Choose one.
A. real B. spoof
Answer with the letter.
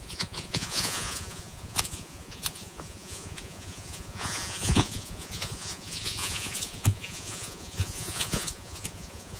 B